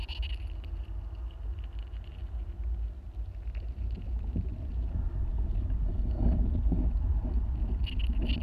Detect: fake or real real